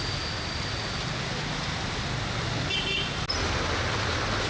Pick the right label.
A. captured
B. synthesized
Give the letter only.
A